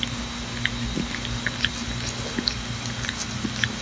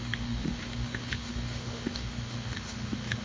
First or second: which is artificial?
second